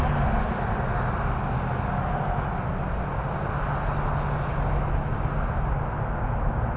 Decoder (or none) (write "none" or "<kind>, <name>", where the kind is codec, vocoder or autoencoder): none